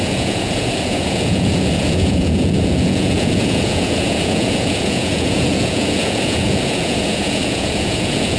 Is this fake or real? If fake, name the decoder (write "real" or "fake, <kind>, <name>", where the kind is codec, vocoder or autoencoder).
fake, vocoder, Vocos